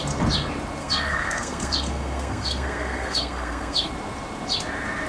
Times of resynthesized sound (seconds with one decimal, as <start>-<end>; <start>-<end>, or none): 0.8-3.9